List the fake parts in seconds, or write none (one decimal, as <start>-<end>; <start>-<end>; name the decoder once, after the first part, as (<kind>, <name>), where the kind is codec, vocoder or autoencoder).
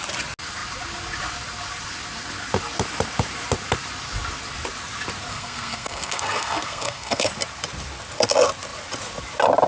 5.3-7.3 (codec, SNAC)